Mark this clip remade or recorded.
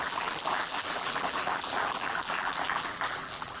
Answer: remade